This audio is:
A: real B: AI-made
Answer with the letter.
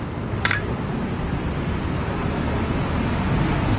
A